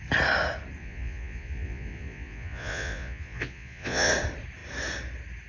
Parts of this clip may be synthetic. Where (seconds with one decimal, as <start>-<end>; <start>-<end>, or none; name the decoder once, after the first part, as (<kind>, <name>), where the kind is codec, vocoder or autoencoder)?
0.8-4.1 (vocoder, Vocos)